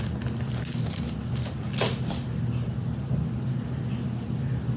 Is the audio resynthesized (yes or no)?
no